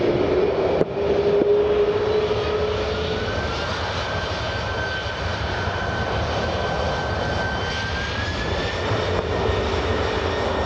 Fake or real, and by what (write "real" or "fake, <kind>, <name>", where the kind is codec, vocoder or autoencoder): real